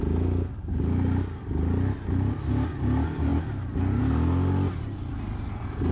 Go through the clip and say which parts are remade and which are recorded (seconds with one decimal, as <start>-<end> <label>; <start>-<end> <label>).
0.0-5.9 recorded